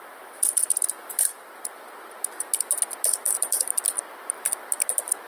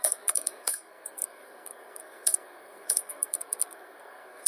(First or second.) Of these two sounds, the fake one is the second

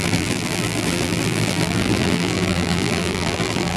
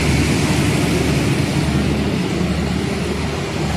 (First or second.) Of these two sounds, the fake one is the first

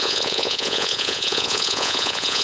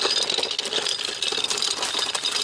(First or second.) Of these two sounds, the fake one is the first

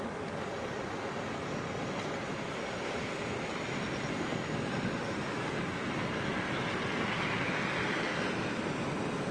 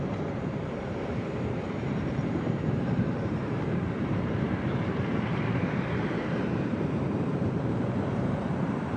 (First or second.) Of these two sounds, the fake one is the second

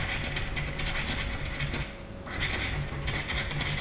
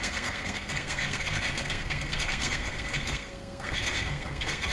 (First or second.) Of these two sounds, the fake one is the second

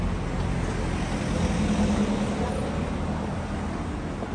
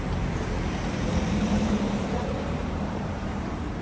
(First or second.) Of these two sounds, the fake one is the second